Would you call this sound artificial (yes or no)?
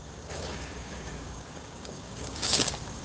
yes